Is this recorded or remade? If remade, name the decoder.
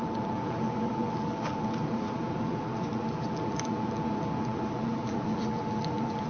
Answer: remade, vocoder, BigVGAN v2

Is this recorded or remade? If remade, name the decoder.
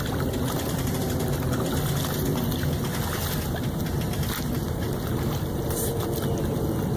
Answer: recorded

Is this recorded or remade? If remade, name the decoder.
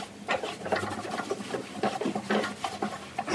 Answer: recorded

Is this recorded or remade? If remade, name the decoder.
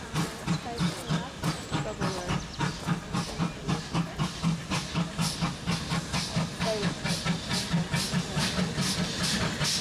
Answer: recorded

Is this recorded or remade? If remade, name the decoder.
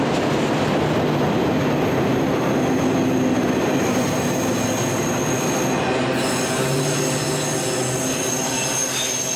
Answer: recorded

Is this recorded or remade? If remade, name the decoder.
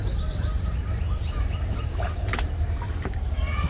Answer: remade, vocoder, BigVGAN v2